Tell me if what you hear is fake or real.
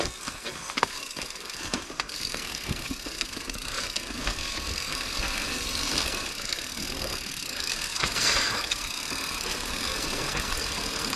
fake